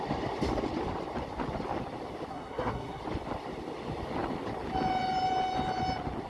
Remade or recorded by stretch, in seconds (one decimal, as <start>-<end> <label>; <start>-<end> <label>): 0.0-2.3 recorded; 2.3-3.0 remade; 3.0-6.3 recorded